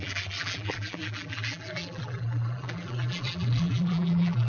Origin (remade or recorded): remade